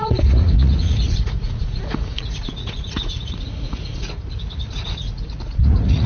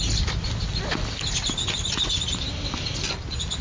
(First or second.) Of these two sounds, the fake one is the first